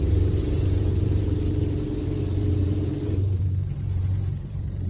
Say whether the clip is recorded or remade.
remade